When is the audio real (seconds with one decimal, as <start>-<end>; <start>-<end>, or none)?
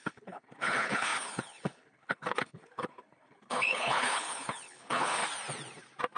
5.2-6.2